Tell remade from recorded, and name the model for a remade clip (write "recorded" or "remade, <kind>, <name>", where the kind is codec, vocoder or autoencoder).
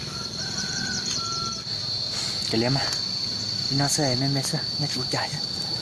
recorded